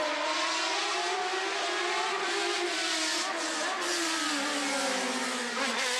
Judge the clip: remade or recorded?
recorded